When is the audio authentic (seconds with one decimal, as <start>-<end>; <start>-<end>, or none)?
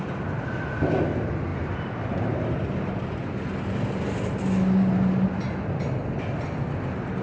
0.0-1.5; 2.6-7.2